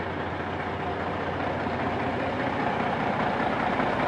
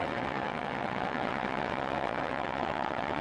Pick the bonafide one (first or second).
first